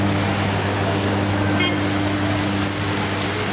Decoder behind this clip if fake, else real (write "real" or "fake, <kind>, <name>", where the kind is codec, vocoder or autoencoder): real